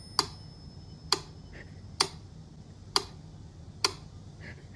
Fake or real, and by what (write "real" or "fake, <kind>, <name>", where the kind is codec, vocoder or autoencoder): real